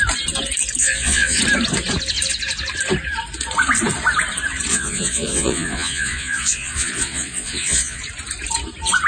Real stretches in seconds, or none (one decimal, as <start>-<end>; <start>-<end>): 0.0-0.8; 1.4-4.7; 8.0-9.1